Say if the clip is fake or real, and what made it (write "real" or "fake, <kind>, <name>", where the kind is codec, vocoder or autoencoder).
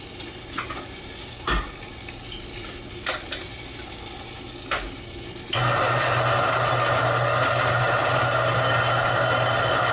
real